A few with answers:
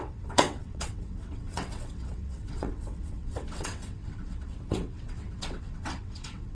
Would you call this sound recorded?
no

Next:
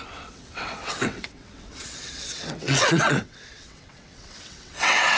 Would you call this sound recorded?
no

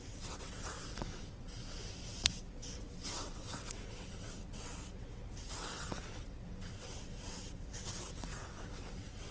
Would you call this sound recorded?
no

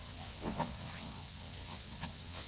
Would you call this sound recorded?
no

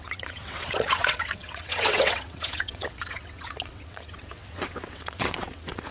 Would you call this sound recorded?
no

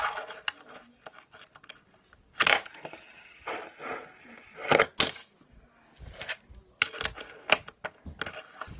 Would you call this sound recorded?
yes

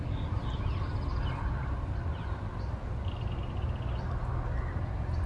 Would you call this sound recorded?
yes